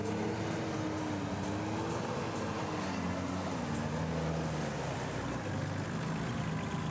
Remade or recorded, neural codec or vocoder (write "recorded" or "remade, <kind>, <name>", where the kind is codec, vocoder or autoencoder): recorded